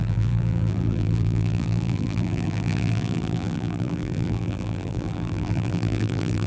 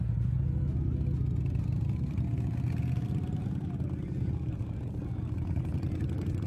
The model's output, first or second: first